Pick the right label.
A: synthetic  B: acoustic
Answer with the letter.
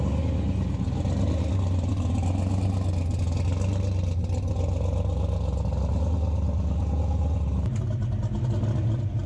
B